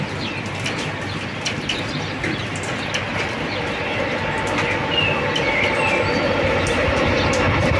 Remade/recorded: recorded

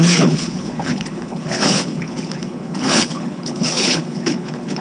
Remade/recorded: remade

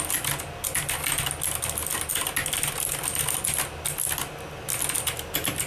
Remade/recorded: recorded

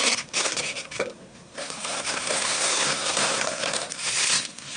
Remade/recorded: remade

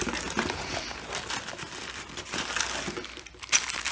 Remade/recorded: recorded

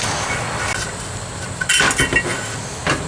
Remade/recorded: recorded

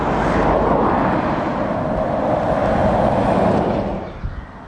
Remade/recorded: recorded